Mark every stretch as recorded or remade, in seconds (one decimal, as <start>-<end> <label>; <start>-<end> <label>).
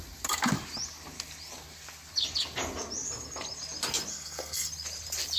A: 0.0-4.1 recorded; 4.1-4.7 remade; 4.7-5.4 recorded